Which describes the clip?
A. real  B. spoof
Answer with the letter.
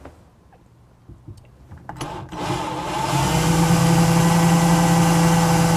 A